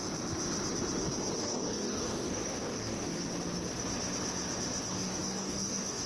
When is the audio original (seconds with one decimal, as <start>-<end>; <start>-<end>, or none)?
0.0-1.4; 3.3-4.9